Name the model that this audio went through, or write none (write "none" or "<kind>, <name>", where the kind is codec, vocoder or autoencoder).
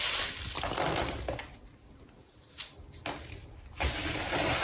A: none